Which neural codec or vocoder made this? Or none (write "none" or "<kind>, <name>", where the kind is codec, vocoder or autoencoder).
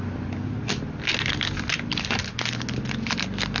none